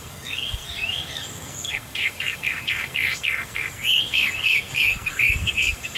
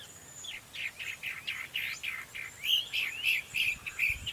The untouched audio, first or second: second